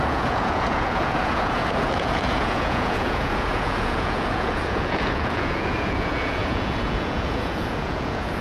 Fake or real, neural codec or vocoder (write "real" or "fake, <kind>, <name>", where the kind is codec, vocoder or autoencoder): fake, vocoder, Vocos